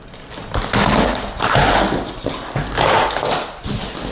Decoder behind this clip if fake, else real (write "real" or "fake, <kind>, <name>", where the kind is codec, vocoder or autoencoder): real